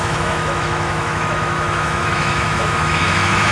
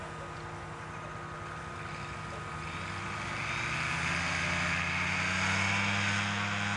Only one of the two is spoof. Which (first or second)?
first